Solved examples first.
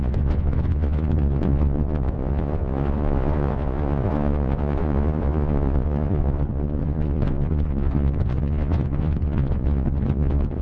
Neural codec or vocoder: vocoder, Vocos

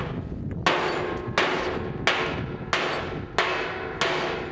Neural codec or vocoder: none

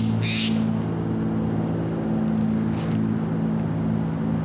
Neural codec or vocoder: none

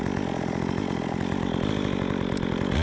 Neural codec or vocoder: none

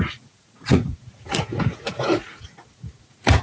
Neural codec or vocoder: vocoder, Vocos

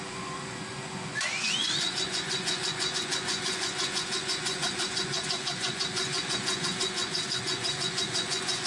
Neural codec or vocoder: vocoder, Vocos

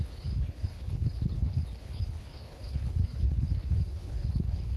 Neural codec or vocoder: codec, HILCodec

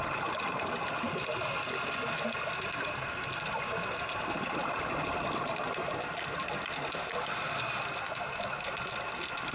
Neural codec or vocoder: none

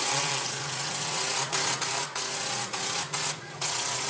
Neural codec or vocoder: vocoder, Vocos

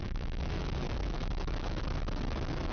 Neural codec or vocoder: autoencoder, DAC-VAE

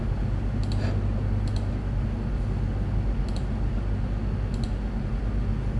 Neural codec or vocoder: none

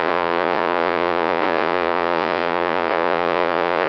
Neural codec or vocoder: vocoder, Vocos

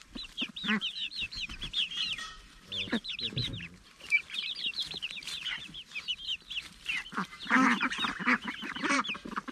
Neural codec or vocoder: vocoder, BigVGAN v2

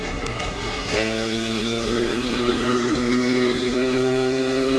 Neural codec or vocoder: codec, SNAC